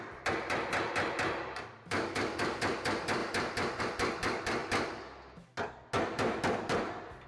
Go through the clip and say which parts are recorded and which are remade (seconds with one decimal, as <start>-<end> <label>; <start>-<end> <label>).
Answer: 0.0-4.6 remade; 4.6-6.0 recorded; 6.0-7.3 remade